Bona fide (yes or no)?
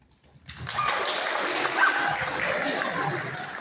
yes